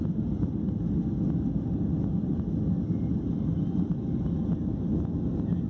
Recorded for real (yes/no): yes